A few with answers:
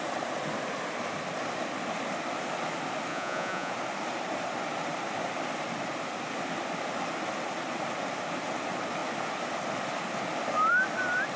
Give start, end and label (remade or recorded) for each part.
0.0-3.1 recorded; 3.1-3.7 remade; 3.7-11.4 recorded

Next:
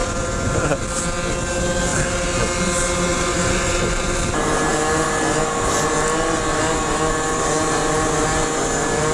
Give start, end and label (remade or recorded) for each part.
0.0-0.8 remade; 0.8-3.1 recorded; 3.1-4.2 remade; 4.2-9.1 recorded

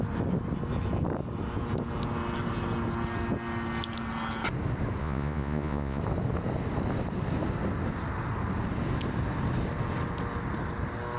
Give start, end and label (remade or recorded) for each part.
0.0-5.0 recorded; 5.0-6.0 remade; 6.0-11.2 recorded

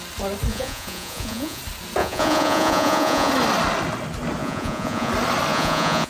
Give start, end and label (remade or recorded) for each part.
0.0-0.5 recorded; 0.5-1.6 remade; 1.6-2.0 recorded; 2.0-3.3 remade; 3.3-4.4 recorded; 4.4-5.1 remade; 5.1-5.5 recorded; 5.5-6.1 remade